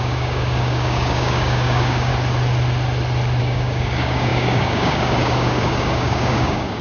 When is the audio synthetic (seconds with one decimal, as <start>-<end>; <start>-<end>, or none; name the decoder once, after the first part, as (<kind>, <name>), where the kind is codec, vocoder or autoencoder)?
0.0-2.1 (codec, DAC); 3.4-6.8